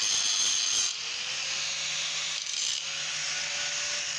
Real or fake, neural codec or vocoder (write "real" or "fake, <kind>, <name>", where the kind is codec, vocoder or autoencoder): real